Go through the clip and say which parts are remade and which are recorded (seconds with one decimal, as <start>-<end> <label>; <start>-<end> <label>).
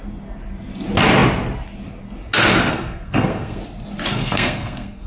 0.0-2.7 recorded; 2.7-3.6 remade; 3.6-4.1 recorded; 4.1-5.1 remade